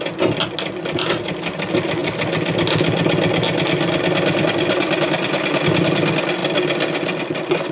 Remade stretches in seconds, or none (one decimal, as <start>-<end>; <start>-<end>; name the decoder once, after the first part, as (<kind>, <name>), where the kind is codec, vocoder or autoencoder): none